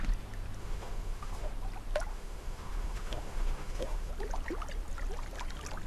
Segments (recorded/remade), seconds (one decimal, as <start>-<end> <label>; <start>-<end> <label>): 0.0-0.6 recorded; 0.6-1.5 remade; 1.5-2.1 recorded; 2.1-4.1 remade; 4.1-5.9 recorded